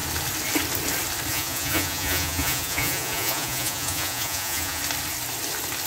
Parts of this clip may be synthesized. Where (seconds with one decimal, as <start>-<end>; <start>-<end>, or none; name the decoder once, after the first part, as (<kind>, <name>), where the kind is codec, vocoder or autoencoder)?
1.3-4.8 (vocoder, Vocos)